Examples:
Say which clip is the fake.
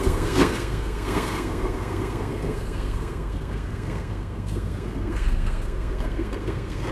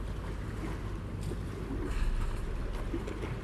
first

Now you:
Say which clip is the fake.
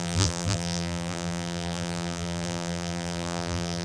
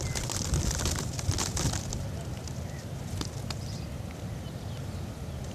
first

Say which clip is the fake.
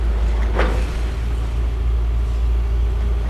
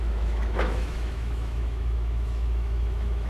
second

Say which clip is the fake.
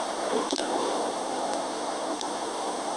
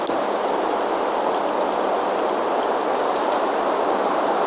first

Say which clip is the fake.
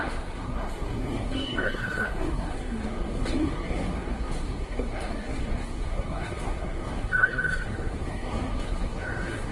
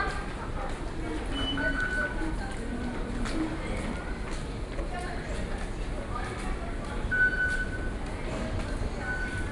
first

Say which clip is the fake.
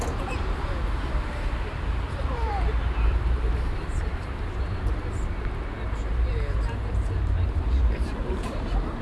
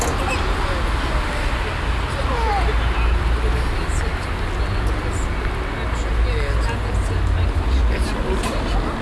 first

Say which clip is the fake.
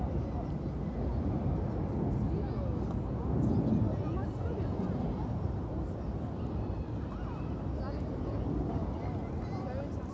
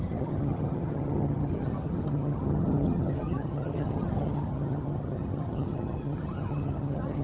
second